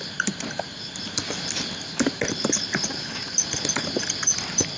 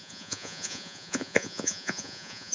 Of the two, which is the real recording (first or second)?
first